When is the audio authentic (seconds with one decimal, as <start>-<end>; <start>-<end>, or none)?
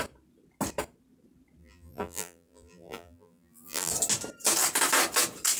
0.0-1.6; 3.9-5.6